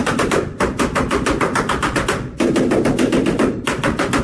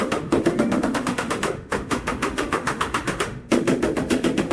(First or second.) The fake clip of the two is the second